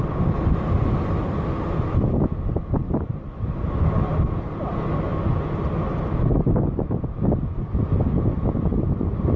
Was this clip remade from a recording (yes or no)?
no